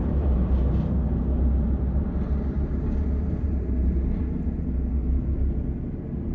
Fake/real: real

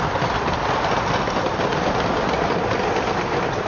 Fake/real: real